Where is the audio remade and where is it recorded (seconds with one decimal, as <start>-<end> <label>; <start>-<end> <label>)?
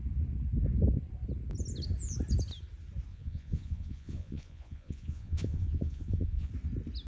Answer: 0.0-3.1 recorded; 3.1-6.5 remade; 6.5-7.1 recorded